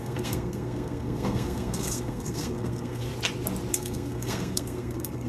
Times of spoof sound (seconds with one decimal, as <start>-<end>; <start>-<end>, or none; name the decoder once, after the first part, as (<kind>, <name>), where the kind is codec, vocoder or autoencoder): 0.0-3.1 (codec, SNAC); 3.7-5.3